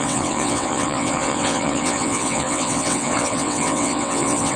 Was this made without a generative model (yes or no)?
no